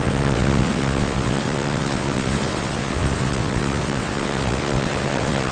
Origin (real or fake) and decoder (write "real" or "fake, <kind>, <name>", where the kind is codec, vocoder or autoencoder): fake, vocoder, WaveNeXt